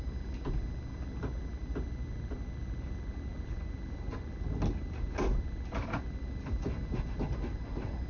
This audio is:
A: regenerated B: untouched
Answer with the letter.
B